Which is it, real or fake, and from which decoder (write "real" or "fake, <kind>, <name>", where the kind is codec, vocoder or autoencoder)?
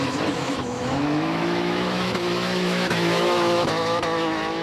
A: fake, autoencoder, DAC-VAE